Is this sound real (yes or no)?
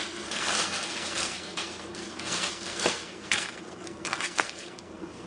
no